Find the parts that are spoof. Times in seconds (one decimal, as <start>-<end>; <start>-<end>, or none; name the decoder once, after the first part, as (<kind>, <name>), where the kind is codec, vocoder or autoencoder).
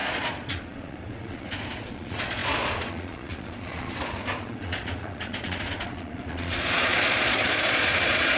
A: 0.0-8.4 (vocoder, Vocos)